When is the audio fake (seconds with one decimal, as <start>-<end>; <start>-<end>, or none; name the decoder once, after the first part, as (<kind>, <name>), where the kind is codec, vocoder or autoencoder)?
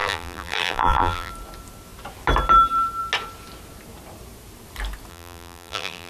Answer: 0.0-1.3 (vocoder, BigVGAN v2); 5.1-6.1